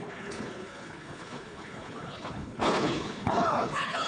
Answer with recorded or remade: remade